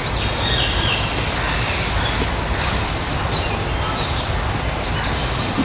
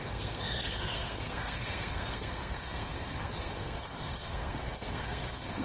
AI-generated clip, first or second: second